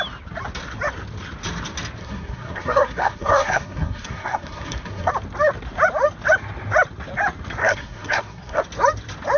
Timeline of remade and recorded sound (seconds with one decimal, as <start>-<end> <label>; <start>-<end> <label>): 0.0-2.0 recorded; 2.0-5.1 remade; 5.1-7.6 recorded; 7.6-8.6 remade; 8.6-9.4 recorded